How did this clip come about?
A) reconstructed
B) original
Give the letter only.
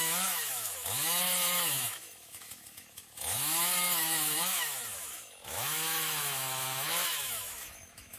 A